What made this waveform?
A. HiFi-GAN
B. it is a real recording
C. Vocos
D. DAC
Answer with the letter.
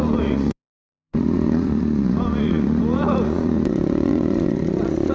C